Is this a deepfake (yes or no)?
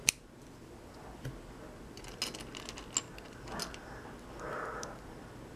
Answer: no